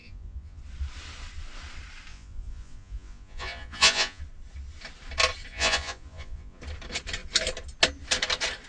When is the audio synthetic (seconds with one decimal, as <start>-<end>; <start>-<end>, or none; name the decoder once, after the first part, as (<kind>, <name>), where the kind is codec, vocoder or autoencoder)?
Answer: 0.0-0.6 (vocoder, Vocos); 2.1-4.2; 5.5-6.6